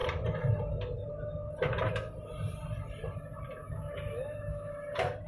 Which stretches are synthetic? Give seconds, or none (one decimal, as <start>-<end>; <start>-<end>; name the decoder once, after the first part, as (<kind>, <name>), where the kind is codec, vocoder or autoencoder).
3.6-4.7 (autoencoder, DAC-VAE)